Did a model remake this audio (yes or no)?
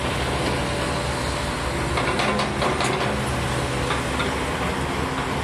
no